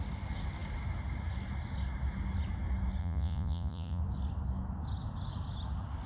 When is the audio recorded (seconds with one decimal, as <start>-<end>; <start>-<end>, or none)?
0.0-3.0; 4.0-6.1